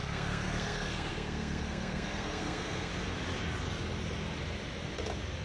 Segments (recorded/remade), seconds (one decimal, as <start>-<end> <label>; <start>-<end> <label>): 0.0-2.9 remade; 2.9-5.4 recorded